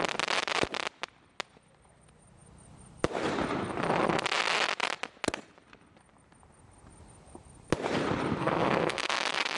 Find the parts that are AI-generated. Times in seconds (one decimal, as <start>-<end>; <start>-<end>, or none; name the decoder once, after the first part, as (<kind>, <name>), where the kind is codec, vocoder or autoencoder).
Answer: 8.4-9.6 (codec, SNAC)